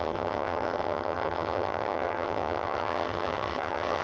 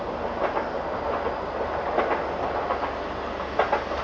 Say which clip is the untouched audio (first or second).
second